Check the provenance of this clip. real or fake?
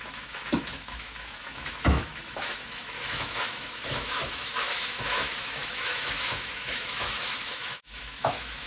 fake